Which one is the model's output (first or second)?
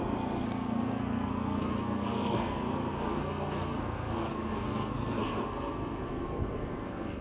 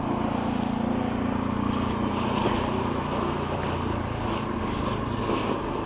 first